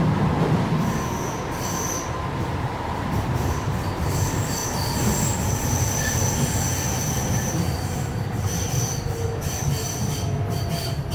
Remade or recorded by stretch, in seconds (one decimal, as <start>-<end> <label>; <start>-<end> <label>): 0.0-11.1 recorded